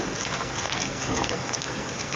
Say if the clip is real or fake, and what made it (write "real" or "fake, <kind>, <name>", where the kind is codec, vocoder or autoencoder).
fake, codec, SNAC